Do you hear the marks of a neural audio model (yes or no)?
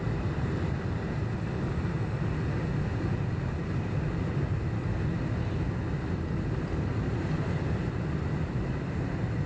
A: no